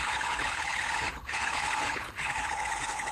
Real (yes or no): no